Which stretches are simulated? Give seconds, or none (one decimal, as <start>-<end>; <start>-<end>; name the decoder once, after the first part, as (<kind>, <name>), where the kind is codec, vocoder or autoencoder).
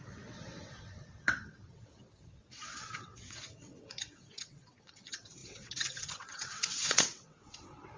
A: 0.0-8.0 (vocoder, WaveNeXt)